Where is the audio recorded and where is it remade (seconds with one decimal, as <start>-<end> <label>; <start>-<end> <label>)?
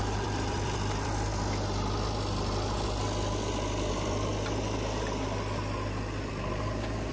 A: 0.0-1.3 remade; 1.3-3.9 recorded; 3.9-4.3 remade; 4.3-6.3 recorded; 6.3-7.1 remade